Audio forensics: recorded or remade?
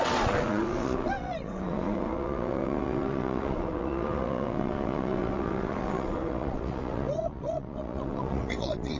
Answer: remade